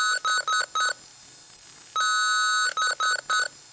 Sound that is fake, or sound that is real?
real